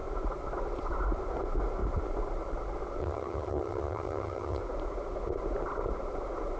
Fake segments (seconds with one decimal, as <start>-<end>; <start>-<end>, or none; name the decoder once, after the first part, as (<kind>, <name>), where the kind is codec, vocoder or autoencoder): 3.0-4.6 (vocoder, HiFi-GAN)